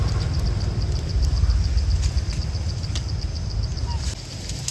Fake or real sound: real